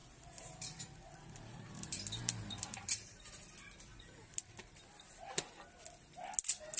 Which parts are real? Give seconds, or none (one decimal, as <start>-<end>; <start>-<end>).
0.0-1.5; 3.3-6.8